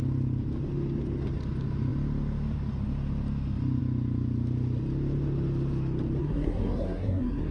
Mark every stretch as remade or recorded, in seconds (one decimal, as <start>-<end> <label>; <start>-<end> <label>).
0.0-6.2 recorded; 6.2-7.5 remade